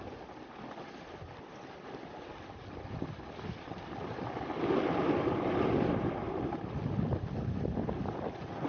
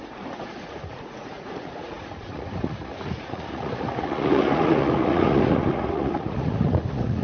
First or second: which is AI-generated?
second